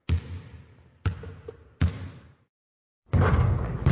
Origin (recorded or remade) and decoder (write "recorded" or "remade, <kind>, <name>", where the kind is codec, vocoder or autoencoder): recorded